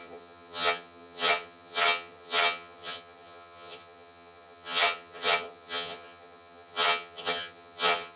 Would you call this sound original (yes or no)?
no